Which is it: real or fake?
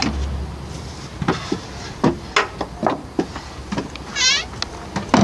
real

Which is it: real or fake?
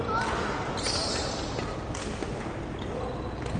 real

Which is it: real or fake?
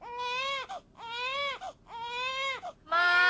real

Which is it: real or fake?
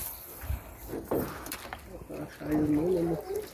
real